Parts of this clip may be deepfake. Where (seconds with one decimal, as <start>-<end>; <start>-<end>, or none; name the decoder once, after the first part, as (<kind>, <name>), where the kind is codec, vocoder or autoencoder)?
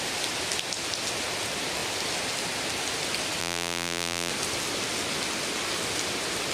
3.4-4.3 (vocoder, BigVGAN v2)